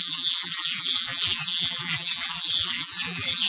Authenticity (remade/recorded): remade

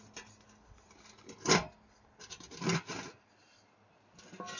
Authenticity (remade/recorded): recorded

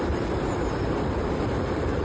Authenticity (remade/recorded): remade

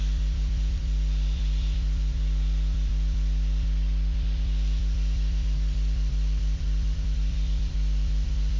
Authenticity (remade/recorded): remade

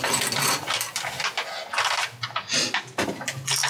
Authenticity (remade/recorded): recorded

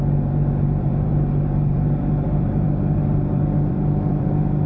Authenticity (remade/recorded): remade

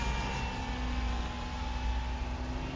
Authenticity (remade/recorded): recorded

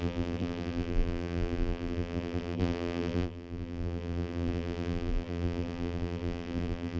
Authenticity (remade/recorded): remade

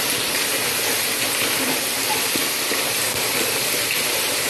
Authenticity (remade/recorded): remade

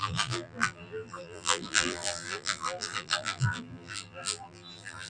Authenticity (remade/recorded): remade